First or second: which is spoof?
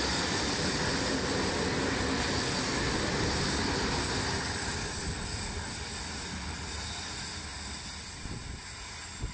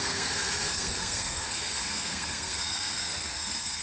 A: second